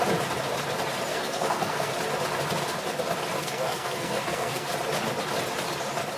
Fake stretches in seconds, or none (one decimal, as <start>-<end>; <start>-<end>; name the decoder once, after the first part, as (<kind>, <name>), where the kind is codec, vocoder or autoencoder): 1.1-1.9 (codec, SNAC); 3.4-4.7